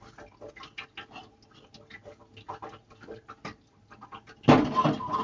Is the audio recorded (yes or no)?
yes